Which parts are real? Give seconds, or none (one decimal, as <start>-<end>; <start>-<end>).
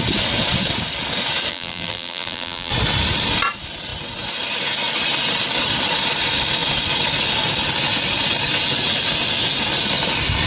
0.0-1.5; 2.7-10.5